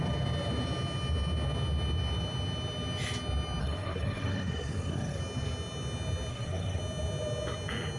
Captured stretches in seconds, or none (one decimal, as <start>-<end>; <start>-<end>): 0.0-3.6; 5.2-6.3; 6.8-8.0